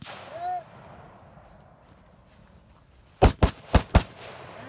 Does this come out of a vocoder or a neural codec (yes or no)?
no